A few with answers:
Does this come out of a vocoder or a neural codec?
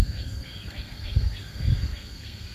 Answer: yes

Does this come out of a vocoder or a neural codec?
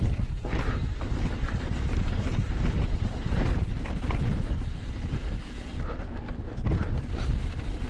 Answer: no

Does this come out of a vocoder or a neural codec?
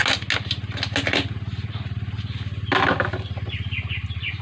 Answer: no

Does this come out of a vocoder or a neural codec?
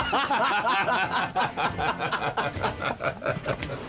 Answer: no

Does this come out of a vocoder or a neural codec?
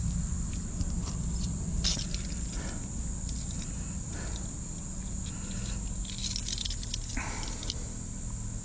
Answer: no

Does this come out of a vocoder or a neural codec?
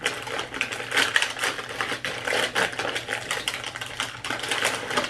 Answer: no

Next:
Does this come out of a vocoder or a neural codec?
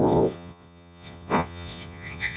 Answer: yes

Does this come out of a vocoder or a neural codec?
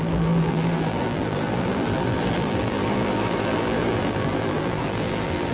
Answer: yes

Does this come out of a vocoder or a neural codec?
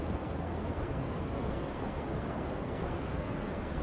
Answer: yes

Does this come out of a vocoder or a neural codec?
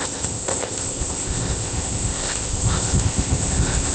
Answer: yes